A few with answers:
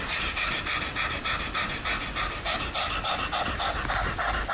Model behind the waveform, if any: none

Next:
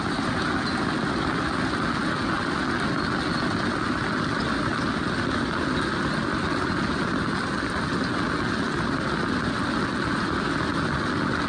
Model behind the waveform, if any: none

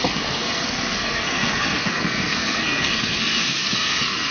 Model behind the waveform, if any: codec, SNAC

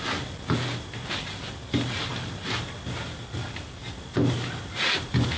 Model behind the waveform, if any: none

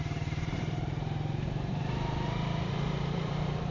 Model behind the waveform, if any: vocoder, BigVGAN v2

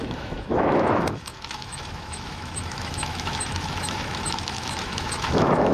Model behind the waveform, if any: autoencoder, DAC-VAE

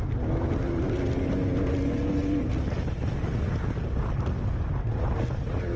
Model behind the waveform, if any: none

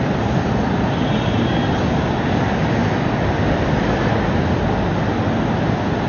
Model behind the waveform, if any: none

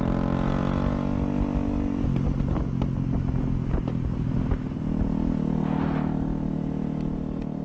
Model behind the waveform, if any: none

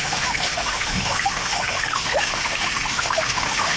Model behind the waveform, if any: autoencoder, DAC-VAE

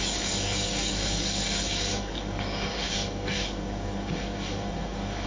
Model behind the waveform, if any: codec, DAC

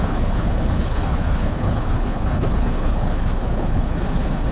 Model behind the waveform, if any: codec, HILCodec